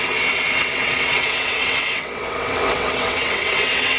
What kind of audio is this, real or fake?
fake